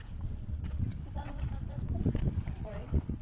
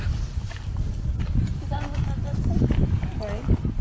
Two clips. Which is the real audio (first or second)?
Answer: second